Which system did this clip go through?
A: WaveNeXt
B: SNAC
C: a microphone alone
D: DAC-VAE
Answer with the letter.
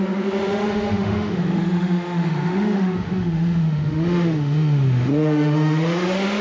D